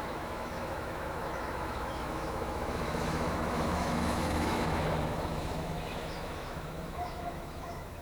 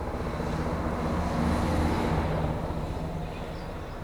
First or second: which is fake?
first